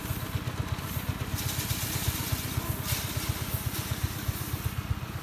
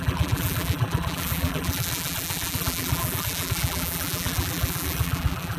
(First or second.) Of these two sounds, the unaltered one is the first